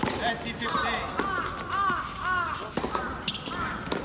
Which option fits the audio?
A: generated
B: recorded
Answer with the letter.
B